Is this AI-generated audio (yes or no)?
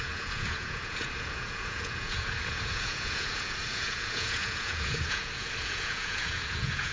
yes